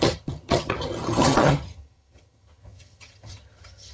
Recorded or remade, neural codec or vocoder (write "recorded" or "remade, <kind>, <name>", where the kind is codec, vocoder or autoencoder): remade, vocoder, HiFi-GAN